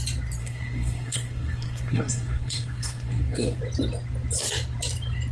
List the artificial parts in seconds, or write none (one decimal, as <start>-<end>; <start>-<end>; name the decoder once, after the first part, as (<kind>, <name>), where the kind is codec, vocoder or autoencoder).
0.4-3.6 (codec, SNAC)